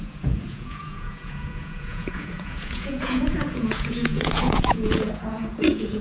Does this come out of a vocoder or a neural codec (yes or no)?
yes